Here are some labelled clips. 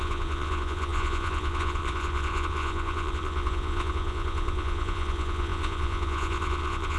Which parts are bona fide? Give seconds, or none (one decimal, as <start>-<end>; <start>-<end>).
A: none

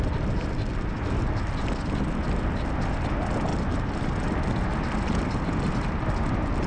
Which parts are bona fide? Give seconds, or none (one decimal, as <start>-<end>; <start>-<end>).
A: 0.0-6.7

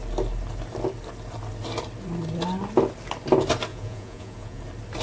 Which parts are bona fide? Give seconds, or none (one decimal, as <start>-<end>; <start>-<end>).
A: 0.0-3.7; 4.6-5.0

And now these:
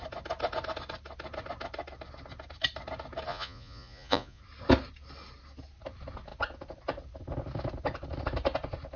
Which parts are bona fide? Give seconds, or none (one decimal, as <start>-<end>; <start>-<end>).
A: 0.0-3.3; 4.4-9.0